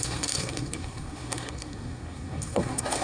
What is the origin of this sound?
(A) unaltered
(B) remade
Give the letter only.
B